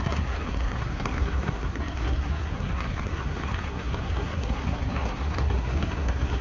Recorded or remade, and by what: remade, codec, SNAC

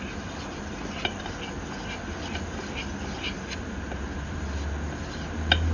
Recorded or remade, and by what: recorded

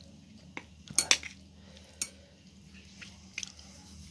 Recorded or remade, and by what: recorded